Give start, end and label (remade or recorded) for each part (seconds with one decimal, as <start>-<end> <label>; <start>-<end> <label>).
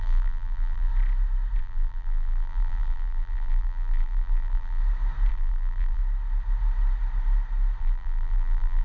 0.0-0.9 remade; 0.9-1.6 recorded; 1.6-4.8 remade; 4.8-5.3 recorded; 5.3-6.0 remade; 6.0-7.8 recorded; 7.8-8.8 remade